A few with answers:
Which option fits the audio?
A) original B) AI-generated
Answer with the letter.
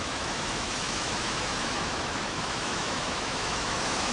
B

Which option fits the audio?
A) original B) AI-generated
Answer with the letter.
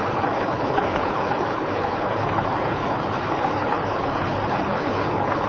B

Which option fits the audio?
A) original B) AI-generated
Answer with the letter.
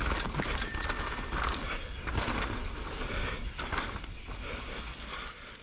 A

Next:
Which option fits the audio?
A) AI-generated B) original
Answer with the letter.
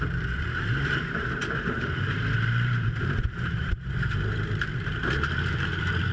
A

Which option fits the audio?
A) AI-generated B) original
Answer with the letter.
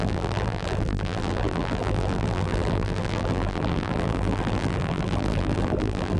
A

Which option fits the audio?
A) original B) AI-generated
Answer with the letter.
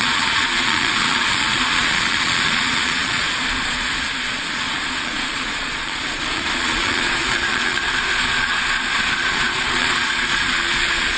B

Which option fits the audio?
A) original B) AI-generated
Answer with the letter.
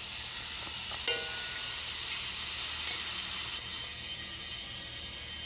A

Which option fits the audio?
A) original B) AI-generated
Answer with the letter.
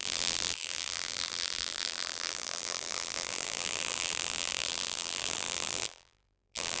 B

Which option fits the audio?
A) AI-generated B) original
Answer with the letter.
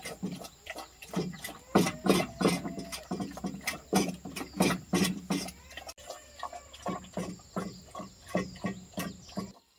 B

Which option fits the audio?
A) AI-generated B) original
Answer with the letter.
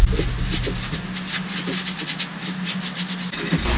B